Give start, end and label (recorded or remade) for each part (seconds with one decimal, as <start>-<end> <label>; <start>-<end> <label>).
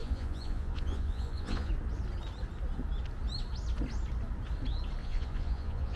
0.0-1.7 remade; 1.7-5.0 recorded; 5.0-6.0 remade